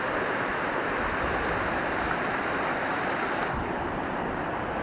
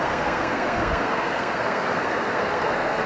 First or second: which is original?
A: first